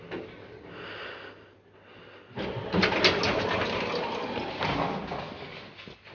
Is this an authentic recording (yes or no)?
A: yes